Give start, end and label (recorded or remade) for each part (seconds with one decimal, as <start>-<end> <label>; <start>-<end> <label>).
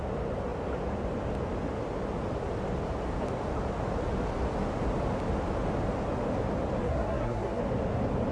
0.0-6.8 recorded; 6.8-7.6 remade; 7.6-8.3 recorded